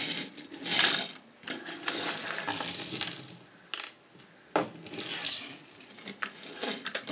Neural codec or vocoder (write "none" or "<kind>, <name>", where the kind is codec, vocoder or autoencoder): none